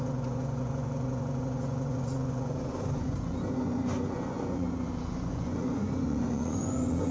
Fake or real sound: fake